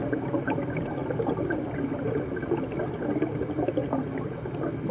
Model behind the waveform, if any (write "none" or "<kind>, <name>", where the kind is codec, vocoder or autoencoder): none